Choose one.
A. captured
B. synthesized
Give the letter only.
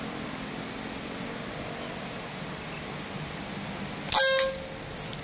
A